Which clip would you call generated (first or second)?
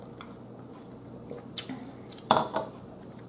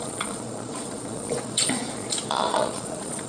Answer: second